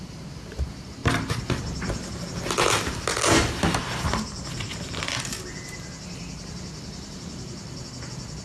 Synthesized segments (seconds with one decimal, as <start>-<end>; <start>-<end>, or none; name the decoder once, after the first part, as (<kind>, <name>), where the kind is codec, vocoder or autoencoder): none